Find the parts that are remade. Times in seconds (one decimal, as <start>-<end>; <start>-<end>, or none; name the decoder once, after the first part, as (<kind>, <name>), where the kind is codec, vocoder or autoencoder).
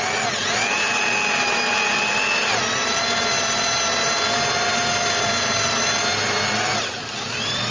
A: none